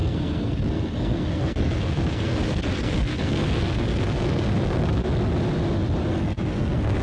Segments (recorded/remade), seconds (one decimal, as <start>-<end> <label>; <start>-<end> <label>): 0.0-5.0 remade; 5.0-6.1 recorded; 6.1-7.0 remade